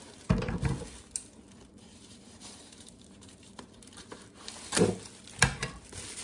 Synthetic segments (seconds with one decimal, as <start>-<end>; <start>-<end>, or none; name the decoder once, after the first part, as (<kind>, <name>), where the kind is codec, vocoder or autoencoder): 1.7-3.6 (vocoder, BigVGAN v2)